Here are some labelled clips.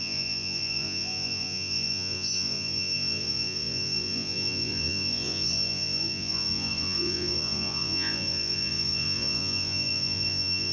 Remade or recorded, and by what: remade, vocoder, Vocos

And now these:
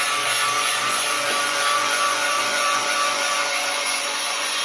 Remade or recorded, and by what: remade, vocoder, Vocos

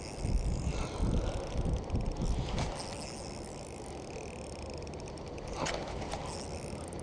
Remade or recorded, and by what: recorded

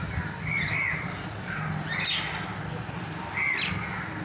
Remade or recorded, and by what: recorded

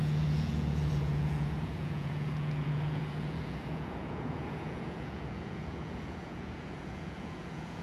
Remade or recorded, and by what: remade, vocoder, Vocos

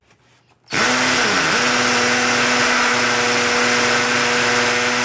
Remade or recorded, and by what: recorded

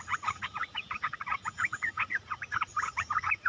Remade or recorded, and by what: remade, vocoder, Vocos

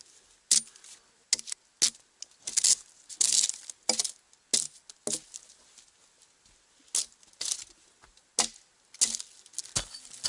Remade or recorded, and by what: recorded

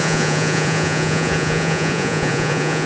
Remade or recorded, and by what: remade, vocoder, Vocos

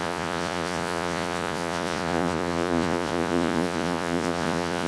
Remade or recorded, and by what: remade, vocoder, Vocos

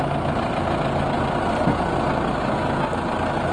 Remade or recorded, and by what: recorded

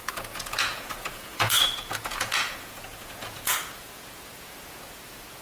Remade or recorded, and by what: remade, vocoder, Vocos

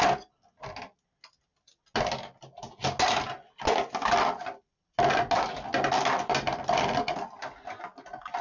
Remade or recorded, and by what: recorded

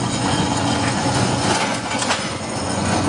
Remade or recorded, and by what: remade, vocoder, Vocos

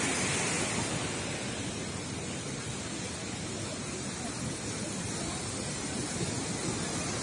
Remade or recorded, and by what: recorded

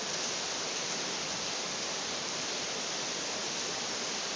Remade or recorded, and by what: recorded